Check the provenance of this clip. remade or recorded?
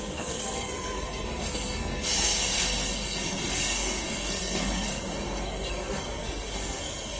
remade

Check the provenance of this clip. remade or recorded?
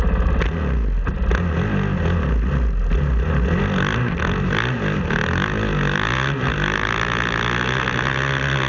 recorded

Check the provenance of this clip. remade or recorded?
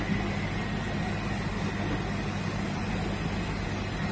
recorded